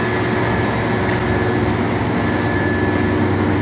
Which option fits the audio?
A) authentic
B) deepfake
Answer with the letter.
A